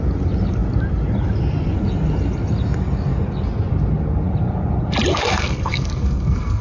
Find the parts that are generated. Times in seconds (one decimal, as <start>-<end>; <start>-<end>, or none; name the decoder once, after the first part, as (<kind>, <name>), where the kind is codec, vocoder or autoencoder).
5.1-6.6 (codec, SNAC)